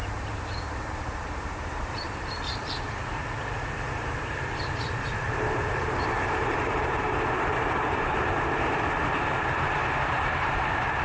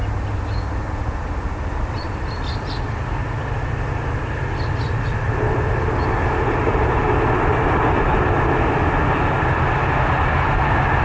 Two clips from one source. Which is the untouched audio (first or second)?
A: second